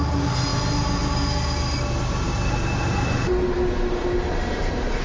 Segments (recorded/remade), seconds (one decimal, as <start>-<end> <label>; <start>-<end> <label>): 0.0-5.0 recorded